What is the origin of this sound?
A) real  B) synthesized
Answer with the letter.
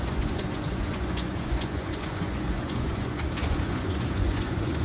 B